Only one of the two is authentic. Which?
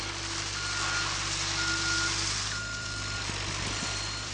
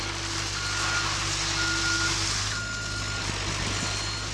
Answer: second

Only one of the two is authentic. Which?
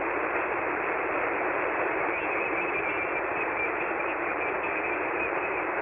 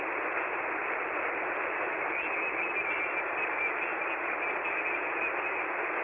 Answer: second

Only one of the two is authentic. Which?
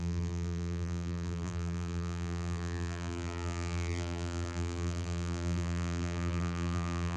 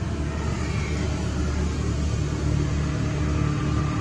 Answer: second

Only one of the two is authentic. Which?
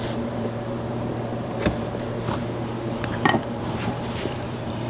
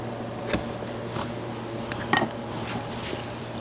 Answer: second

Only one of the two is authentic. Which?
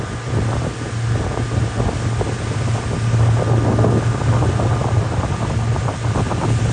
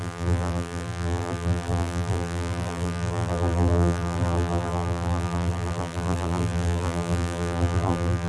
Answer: first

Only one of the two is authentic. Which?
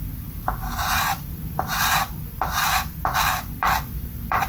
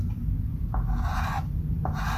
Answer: second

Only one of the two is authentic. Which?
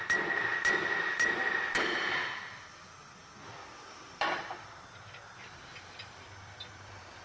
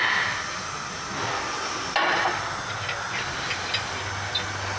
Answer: second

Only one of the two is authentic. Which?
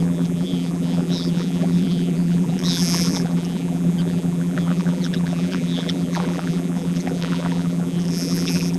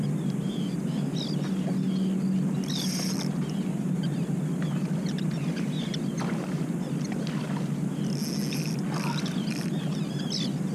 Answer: second